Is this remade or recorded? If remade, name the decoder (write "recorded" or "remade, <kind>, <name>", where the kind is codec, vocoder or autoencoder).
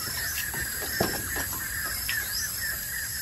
remade, vocoder, BigVGAN v2